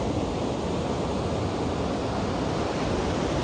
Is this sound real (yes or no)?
yes